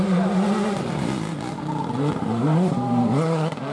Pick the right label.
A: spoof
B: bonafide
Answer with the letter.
B